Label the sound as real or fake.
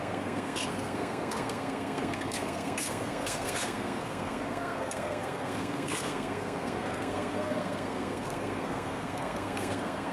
fake